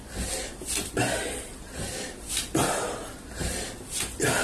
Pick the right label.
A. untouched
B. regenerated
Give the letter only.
A